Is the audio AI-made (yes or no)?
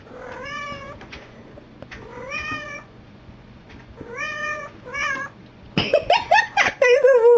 yes